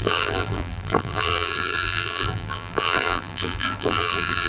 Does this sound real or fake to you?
fake